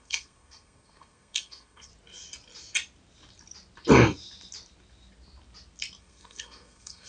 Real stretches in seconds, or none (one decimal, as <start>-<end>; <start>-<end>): 1.9-6.0